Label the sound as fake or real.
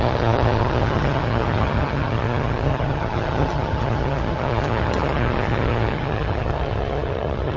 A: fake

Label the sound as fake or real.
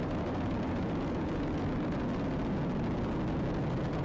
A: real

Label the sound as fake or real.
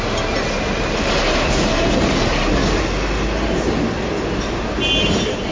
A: real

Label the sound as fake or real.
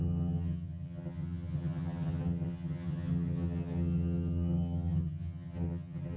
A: fake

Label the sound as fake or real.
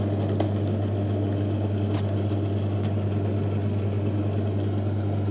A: real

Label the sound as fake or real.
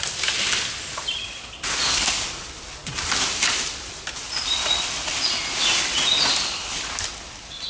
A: real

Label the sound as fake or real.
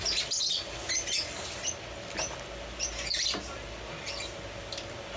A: real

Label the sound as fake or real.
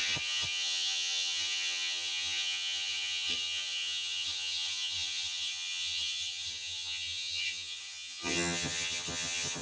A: fake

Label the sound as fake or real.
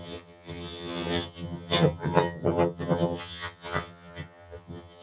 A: fake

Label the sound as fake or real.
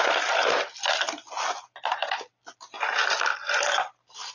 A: real